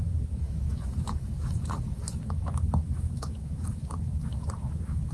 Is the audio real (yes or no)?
no